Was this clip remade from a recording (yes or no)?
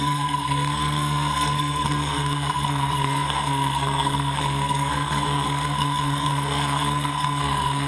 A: yes